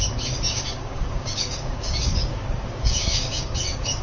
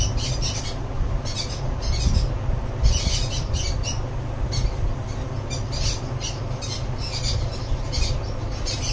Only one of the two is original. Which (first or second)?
second